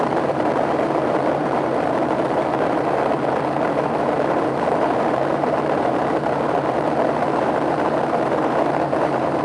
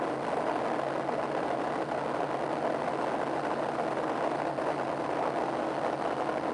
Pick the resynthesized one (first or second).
first